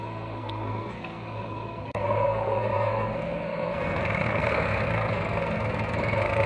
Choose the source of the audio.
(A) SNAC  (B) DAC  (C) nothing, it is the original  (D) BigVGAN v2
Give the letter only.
A